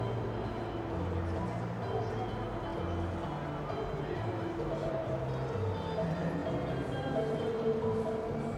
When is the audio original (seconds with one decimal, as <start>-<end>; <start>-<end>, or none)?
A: 0.0-8.6